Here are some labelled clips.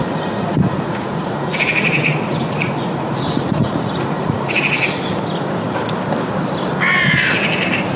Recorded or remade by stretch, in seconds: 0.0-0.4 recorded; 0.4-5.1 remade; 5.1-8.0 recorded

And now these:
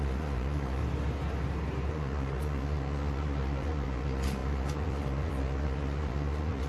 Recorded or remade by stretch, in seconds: 0.0-0.8 remade; 0.8-1.9 recorded; 1.9-6.7 remade

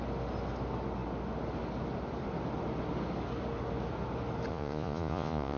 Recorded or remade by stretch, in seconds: 0.0-4.5 recorded; 4.5-5.6 remade

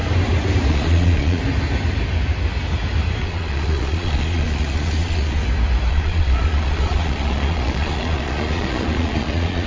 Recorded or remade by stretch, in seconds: 0.0-0.7 recorded; 0.7-1.4 remade; 1.4-3.2 recorded; 3.2-5.4 remade; 5.4-5.9 recorded; 5.9-9.7 remade

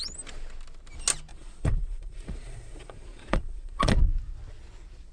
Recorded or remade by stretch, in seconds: 0.0-1.3 recorded; 1.3-4.1 remade; 4.1-5.1 recorded

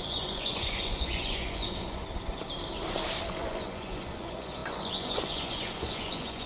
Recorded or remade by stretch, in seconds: 0.0-2.0 remade; 2.0-3.3 recorded; 3.3-6.5 remade

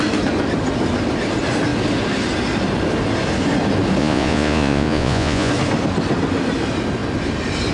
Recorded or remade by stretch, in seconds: 0.0-4.0 recorded; 4.0-5.5 remade; 5.5-7.7 recorded

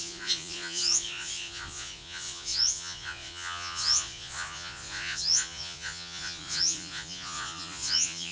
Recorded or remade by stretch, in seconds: 0.0-8.3 remade